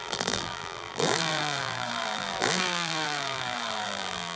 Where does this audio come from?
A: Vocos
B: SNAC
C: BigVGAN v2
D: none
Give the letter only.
C